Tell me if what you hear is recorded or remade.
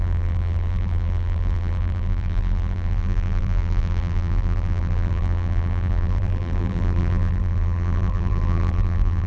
remade